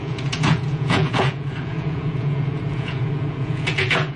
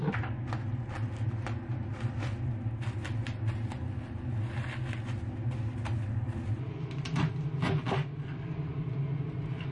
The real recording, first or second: second